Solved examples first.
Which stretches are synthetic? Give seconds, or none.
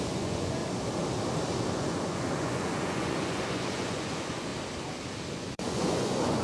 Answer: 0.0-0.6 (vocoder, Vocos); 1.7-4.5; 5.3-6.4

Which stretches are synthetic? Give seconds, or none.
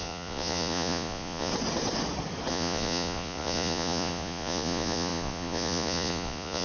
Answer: 0.0-1.5 (vocoder, Vocos); 2.5-6.6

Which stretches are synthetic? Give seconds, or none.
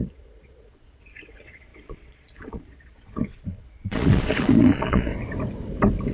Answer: 0.0-5.1 (vocoder, Vocos)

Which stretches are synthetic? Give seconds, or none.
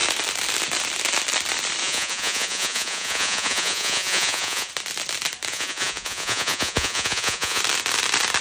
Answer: 1.8-4.7 (vocoder, Vocos); 5.5-7.6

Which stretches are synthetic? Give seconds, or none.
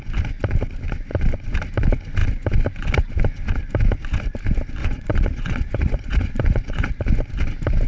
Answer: 4.8-7.0 (vocoder, Vocos)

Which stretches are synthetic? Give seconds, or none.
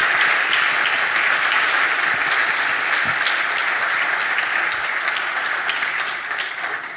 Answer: none